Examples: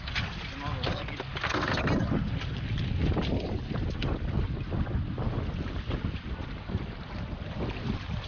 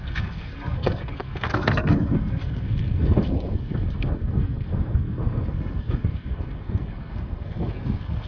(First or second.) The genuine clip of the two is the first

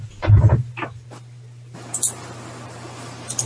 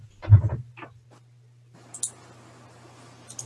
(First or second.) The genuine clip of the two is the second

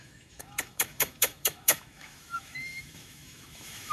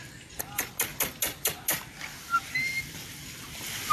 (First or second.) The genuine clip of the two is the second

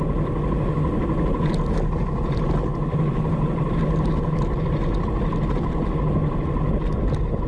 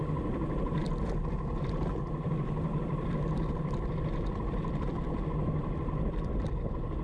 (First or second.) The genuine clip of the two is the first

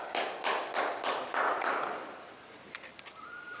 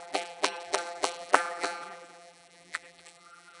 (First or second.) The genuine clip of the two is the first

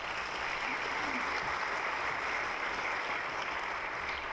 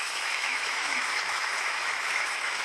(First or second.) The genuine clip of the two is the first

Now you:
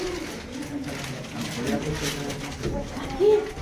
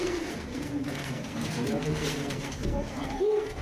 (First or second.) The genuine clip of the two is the first